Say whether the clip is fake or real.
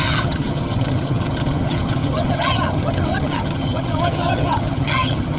fake